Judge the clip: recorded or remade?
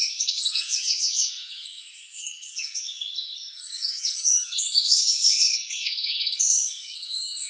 remade